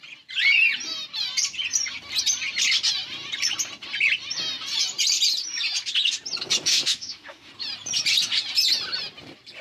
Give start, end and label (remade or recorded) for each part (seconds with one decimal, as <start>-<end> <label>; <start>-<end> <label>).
0.0-6.7 recorded; 6.7-7.5 remade; 7.5-9.6 recorded